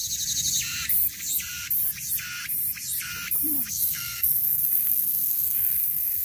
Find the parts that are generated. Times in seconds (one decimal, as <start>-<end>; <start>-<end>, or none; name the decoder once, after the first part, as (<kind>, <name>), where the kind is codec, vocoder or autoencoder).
3.7-6.2 (codec, SNAC)